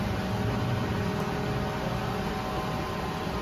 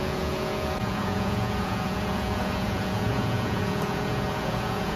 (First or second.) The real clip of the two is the first